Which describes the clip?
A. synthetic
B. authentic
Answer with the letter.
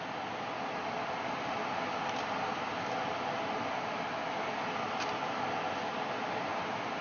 B